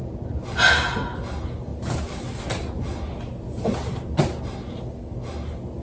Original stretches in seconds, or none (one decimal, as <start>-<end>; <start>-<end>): 0.0-5.8